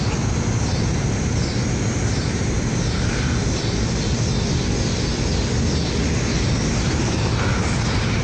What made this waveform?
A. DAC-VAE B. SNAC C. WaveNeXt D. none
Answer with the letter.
D